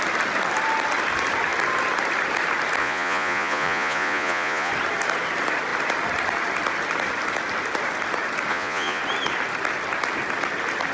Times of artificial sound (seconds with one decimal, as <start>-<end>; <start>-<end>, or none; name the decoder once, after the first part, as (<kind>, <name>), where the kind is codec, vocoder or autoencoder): 2.8-4.7 (vocoder, Vocos); 8.5-9.0